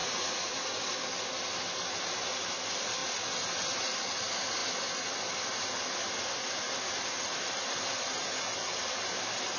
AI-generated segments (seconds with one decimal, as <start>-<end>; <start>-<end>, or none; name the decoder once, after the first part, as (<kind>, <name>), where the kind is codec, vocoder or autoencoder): 0.0-0.8 (vocoder, Vocos)